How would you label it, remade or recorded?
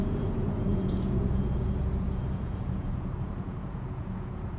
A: remade